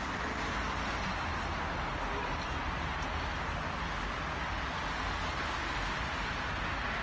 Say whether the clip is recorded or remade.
recorded